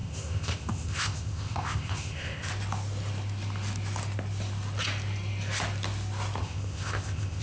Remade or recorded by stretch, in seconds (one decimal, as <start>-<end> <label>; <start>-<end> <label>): 0.0-2.5 remade; 2.5-6.4 recorded; 6.4-7.4 remade